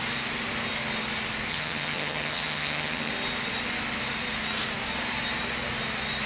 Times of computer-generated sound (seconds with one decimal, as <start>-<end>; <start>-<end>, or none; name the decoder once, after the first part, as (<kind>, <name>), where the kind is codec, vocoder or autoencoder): 1.5-3.1 (vocoder, HiFi-GAN)

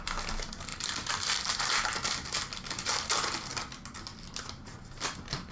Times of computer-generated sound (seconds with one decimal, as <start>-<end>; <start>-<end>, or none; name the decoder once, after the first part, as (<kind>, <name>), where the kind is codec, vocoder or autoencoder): none

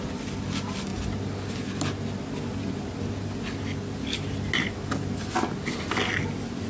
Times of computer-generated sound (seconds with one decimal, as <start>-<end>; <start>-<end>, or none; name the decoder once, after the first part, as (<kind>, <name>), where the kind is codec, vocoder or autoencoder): none

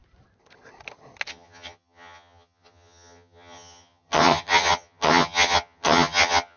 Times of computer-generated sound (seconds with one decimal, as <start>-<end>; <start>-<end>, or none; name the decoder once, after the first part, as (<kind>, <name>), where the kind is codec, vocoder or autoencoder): 1.3-6.6 (vocoder, HiFi-GAN)

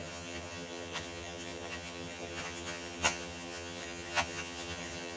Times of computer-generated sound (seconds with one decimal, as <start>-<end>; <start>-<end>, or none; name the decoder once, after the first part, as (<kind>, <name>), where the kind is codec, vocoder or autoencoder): 0.0-5.2 (vocoder, HiFi-GAN)

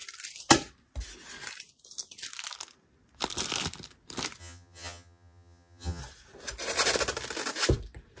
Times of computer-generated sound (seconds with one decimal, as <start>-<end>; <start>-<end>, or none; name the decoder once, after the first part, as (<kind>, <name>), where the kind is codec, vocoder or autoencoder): 4.4-6.0 (vocoder, HiFi-GAN)